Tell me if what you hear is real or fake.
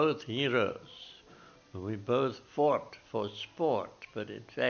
real